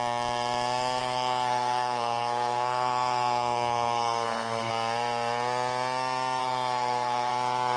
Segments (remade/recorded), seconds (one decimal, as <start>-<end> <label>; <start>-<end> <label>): 0.0-1.0 recorded; 1.0-4.7 remade; 4.7-6.4 recorded; 6.4-7.3 remade; 7.3-7.8 recorded